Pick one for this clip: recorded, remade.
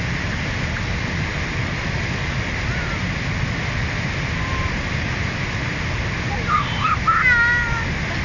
recorded